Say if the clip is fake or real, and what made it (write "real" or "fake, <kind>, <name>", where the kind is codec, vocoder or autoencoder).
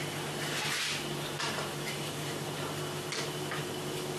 real